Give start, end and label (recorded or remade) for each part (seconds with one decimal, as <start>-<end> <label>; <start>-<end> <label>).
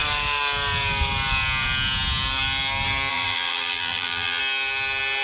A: 0.0-3.1 recorded; 3.1-4.4 remade; 4.4-5.2 recorded